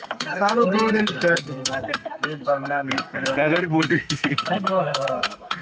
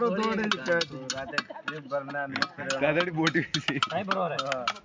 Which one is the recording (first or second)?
second